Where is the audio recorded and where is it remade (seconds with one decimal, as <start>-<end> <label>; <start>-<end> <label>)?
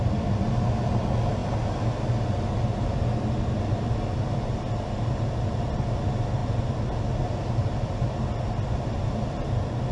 0.0-9.9 recorded